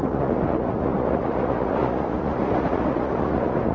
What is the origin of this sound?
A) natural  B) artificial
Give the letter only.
B